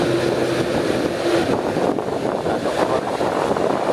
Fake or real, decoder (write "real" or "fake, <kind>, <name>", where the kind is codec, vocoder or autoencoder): real